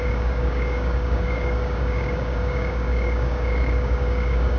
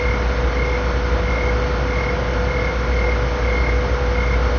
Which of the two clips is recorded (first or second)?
second